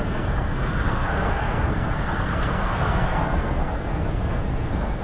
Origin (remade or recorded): remade